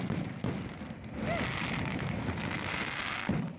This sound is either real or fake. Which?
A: real